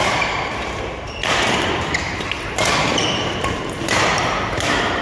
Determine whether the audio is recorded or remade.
remade